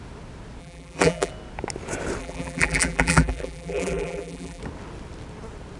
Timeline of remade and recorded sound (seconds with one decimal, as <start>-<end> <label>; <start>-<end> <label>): 0.0-0.6 recorded; 0.6-1.3 remade; 1.3-2.2 recorded; 2.2-4.6 remade; 4.6-5.8 recorded